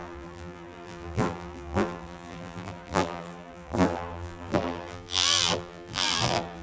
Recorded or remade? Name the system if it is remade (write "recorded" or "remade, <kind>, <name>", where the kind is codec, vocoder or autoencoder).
remade, vocoder, BigVGAN v2